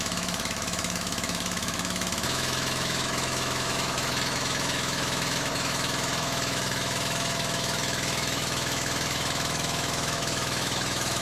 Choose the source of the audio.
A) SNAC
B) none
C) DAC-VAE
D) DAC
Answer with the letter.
C